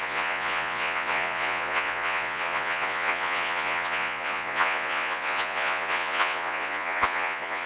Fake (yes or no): yes